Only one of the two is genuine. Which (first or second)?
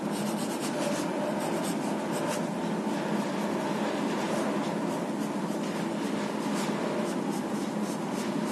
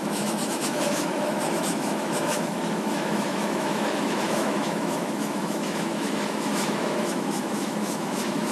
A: first